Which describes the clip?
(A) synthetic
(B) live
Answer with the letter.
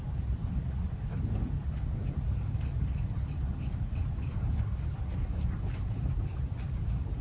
B